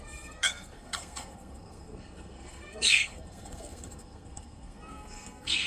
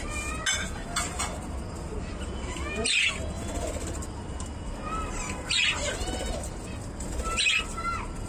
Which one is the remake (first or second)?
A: first